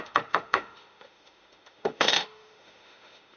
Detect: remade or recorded remade